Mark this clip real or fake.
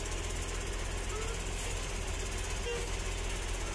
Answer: real